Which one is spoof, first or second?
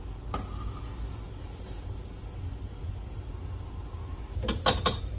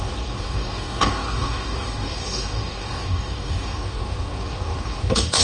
second